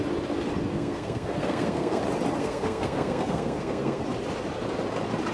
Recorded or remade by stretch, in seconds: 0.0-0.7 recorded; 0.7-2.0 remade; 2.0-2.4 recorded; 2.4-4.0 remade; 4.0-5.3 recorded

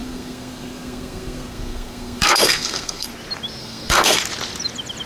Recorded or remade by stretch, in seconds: 0.0-3.1 remade; 3.1-3.6 recorded; 3.6-4.2 remade; 4.2-5.1 recorded

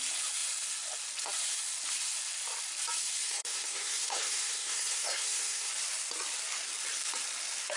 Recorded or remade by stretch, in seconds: 0.0-3.2 recorded; 3.2-5.7 remade; 5.7-7.8 recorded

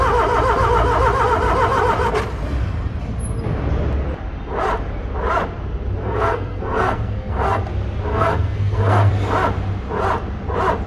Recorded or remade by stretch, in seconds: 0.0-6.0 recorded; 6.0-7.6 remade; 7.6-8.1 recorded; 8.1-9.1 remade; 9.1-10.9 recorded

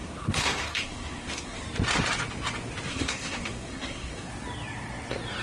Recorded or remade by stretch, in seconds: 0.0-1.6 remade; 1.6-2.9 recorded; 2.9-4.3 remade; 4.3-5.4 recorded

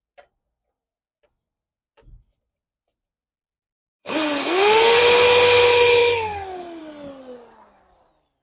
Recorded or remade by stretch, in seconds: 0.0-4.0 recorded; 4.0-5.0 remade; 5.0-8.4 recorded

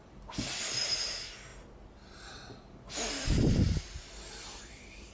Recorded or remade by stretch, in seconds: 0.0-5.1 recorded